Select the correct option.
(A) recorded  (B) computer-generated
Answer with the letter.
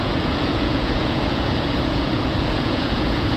B